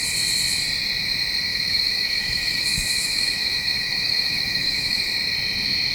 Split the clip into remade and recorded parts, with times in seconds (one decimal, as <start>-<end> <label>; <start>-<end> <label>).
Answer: 0.0-1.5 recorded; 1.5-5.0 remade; 5.0-5.9 recorded